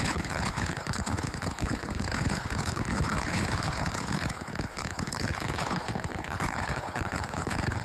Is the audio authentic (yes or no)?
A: no